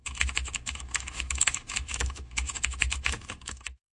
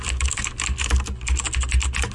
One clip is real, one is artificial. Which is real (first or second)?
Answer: second